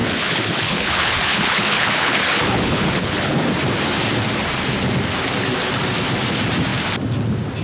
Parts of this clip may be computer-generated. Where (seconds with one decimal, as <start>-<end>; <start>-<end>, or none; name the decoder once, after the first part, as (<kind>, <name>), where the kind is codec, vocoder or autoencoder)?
0.0-3.4 (codec, HILCodec)